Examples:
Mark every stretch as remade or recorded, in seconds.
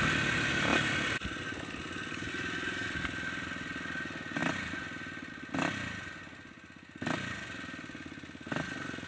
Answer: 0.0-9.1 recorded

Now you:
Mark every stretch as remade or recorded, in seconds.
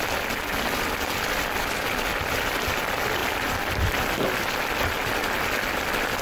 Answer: 0.0-6.2 recorded